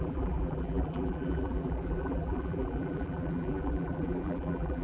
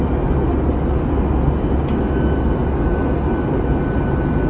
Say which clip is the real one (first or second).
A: second